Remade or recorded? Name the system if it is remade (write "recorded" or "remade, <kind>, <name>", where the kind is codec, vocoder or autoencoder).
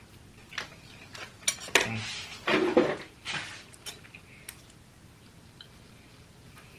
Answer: recorded